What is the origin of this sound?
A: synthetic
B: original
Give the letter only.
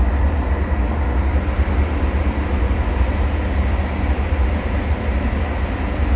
B